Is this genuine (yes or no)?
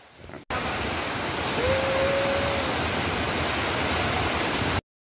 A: yes